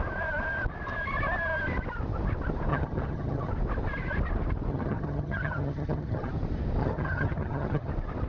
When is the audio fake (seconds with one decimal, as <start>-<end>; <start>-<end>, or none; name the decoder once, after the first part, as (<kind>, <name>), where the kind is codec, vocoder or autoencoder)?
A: 2.7-3.5 (vocoder, HiFi-GAN); 4.7-6.3; 6.8-7.9